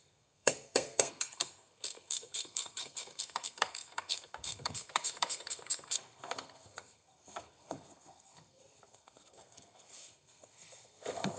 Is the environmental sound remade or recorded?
remade